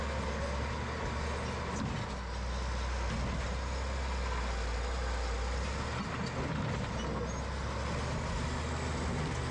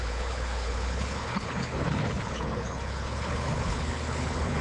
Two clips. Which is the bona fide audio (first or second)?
first